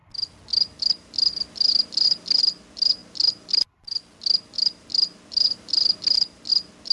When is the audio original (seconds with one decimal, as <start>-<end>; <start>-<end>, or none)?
0.0-6.9